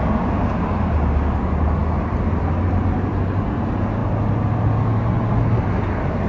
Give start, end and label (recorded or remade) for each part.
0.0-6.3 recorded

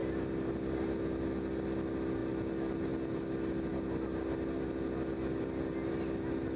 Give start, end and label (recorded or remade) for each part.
0.0-6.6 recorded

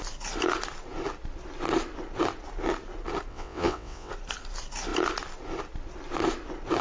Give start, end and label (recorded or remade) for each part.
0.0-3.3 recorded; 3.3-4.1 remade; 4.1-6.8 recorded

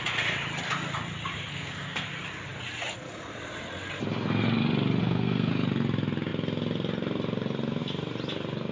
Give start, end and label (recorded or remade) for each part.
0.0-1.5 recorded; 1.5-2.1 remade; 2.1-5.0 recorded; 5.0-5.5 remade; 5.5-8.7 recorded